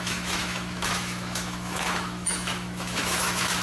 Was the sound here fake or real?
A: fake